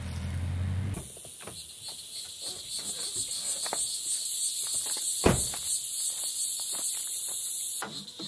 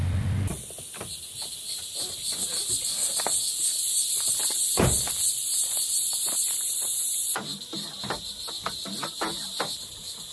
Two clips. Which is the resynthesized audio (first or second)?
second